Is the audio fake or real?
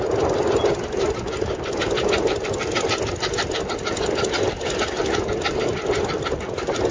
real